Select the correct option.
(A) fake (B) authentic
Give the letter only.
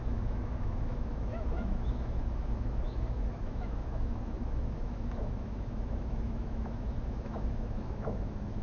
A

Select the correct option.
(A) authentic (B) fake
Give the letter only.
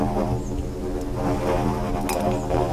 A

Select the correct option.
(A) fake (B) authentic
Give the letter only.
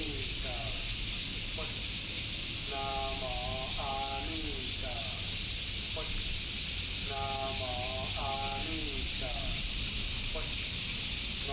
B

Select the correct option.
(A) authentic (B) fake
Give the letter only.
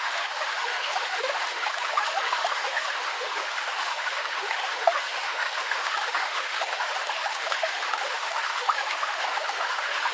B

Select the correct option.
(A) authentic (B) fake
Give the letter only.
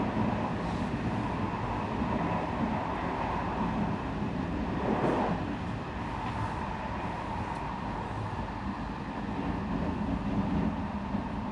A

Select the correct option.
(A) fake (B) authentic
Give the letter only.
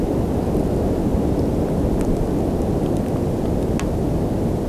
B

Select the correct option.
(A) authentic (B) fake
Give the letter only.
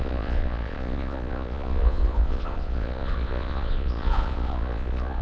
B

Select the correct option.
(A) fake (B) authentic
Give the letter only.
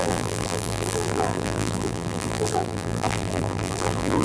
A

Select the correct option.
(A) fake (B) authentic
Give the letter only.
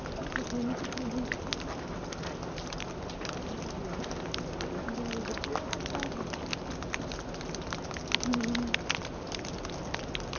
B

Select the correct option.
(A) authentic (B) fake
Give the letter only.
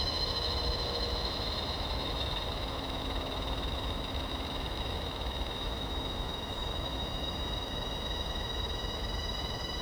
B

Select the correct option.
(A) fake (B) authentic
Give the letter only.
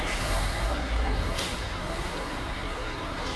A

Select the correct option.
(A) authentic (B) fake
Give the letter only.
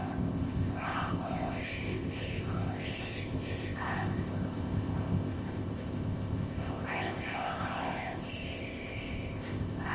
B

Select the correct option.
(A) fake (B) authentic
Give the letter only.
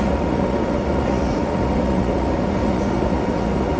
A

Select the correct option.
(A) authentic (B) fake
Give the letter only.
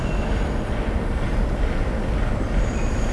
A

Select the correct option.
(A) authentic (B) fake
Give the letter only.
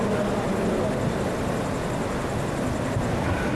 A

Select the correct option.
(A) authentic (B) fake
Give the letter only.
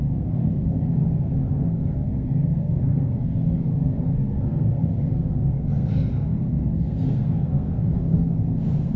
B